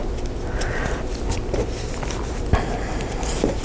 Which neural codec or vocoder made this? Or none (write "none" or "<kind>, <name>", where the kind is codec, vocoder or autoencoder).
none